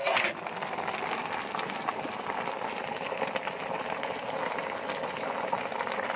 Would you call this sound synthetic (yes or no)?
no